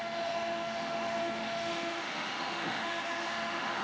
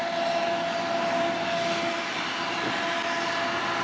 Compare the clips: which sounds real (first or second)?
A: second